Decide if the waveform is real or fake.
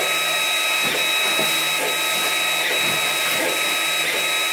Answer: real